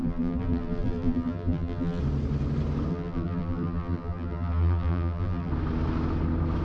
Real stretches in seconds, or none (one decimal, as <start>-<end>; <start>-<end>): 2.0-2.9; 5.5-6.6